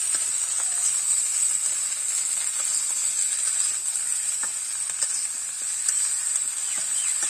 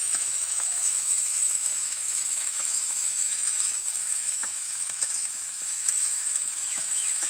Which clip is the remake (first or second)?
second